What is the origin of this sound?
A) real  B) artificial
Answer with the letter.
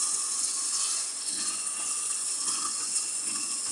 B